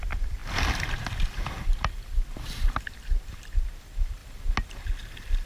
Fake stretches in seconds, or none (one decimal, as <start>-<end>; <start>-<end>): 0.0-4.2; 4.8-5.5